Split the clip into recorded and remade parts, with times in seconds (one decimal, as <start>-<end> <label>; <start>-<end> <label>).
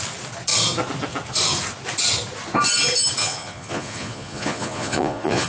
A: 0.0-3.2 recorded; 3.2-5.5 remade